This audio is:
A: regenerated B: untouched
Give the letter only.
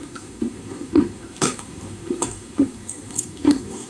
A